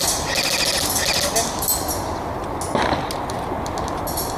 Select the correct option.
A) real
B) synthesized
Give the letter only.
A